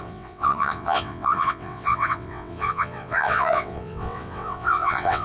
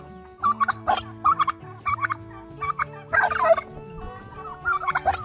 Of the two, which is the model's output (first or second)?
first